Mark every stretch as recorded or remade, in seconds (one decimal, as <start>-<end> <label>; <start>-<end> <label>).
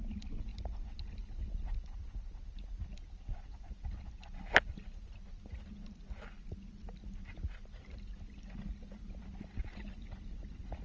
0.0-10.8 recorded